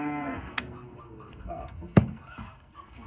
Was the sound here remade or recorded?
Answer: remade